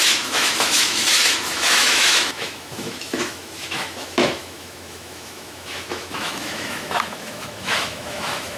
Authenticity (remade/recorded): remade